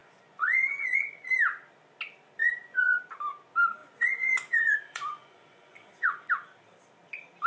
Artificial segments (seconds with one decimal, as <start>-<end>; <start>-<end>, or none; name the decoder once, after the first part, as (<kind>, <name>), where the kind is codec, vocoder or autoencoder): 0.0-1.3 (vocoder, Vocos); 2.4-3.0; 3.8-6.3